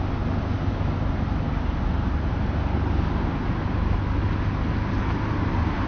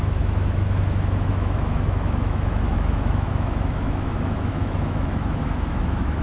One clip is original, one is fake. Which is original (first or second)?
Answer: first